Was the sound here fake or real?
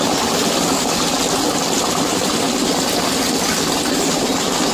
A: real